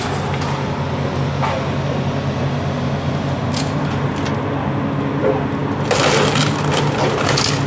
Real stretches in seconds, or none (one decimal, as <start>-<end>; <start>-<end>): 0.0-7.7